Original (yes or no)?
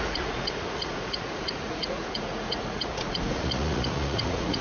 no